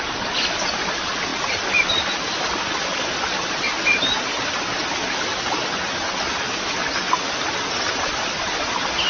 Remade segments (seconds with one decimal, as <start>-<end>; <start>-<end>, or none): none